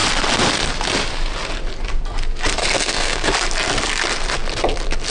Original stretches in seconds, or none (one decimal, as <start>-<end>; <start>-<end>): 0.0-2.6; 3.3-5.1